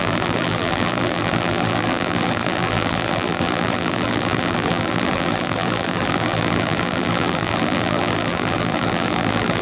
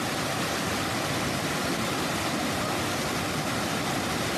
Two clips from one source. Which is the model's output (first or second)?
first